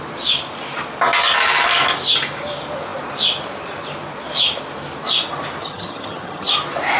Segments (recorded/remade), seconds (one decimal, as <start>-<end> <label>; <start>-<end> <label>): 0.0-5.6 recorded; 5.6-6.5 remade; 6.5-7.0 recorded